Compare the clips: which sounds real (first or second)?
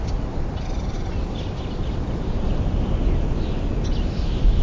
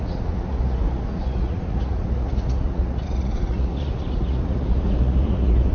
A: first